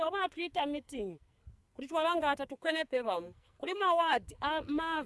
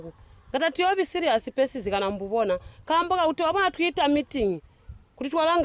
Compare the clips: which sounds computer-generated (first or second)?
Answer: first